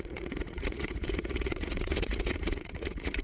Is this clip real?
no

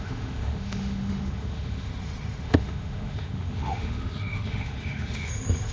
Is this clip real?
no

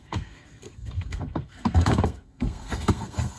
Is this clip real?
no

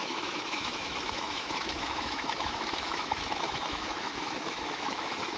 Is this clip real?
no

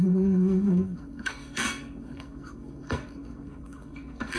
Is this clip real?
no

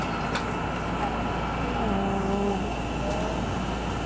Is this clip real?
yes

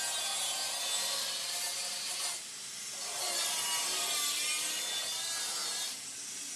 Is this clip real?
yes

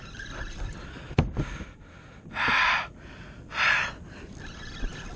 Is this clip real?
yes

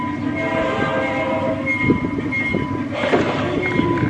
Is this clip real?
yes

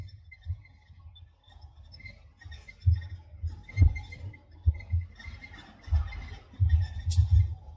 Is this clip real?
yes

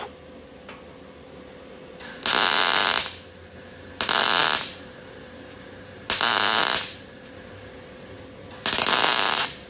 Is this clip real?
yes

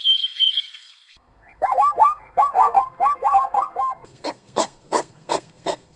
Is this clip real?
no